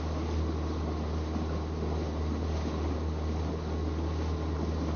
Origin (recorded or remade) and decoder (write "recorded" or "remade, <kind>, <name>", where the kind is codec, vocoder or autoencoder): recorded